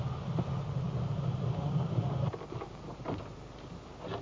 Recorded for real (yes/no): yes